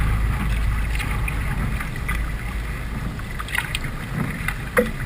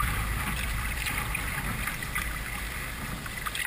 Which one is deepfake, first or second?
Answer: second